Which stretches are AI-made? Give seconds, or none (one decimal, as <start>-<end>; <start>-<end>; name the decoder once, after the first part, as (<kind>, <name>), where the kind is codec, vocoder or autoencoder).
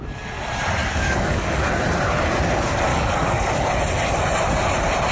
0.8-1.7 (codec, DAC); 2.9-3.5